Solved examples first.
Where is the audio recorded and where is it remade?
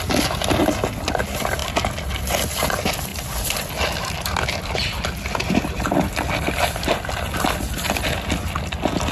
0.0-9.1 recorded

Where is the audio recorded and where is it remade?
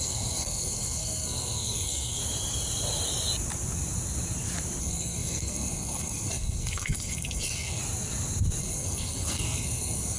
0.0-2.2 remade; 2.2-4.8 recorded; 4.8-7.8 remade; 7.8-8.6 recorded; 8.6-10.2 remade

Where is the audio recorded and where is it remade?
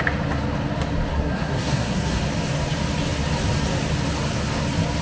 0.0-1.1 recorded; 1.1-2.2 remade; 2.2-5.0 recorded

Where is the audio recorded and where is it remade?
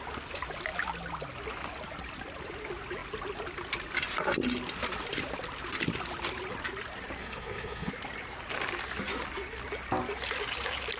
0.0-7.2 recorded; 7.2-7.9 remade; 7.9-11.0 recorded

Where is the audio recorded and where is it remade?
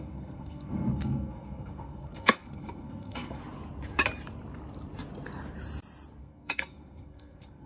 0.0-3.4 remade; 3.4-6.2 recorded; 6.2-7.7 remade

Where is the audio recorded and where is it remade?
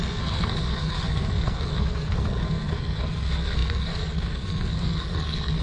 0.0-5.6 remade